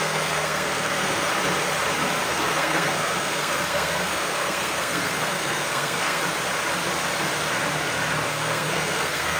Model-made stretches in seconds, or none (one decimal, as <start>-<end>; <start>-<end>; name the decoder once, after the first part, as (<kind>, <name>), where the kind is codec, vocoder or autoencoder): 0.0-1.3 (codec, SNAC); 2.3-6.2; 8.3-9.4